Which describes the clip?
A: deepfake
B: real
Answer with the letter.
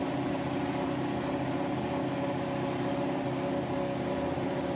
B